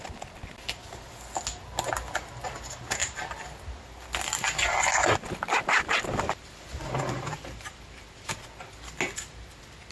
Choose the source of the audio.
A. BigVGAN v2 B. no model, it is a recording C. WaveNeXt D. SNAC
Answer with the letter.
B